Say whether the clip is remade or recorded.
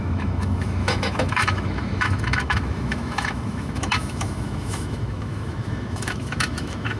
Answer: remade